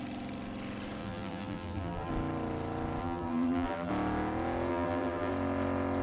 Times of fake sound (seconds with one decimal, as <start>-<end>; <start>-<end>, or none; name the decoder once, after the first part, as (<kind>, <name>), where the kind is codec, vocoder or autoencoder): 1.0-2.1 (vocoder, BigVGAN v2); 3.0-3.9; 4.7-5.3